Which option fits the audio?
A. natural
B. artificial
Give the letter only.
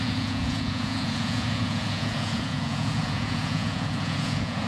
B